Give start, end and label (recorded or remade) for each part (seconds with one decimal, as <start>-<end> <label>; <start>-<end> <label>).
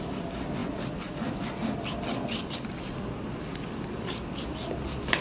0.0-5.2 recorded